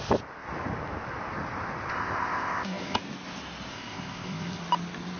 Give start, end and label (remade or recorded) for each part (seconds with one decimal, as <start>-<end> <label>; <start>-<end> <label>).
0.0-1.9 recorded; 1.9-3.0 remade; 3.0-3.7 recorded; 3.7-4.6 remade; 4.6-5.2 recorded